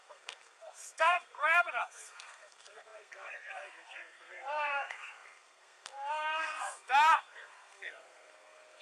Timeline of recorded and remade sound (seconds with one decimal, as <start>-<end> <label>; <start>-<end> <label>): 0.0-8.8 remade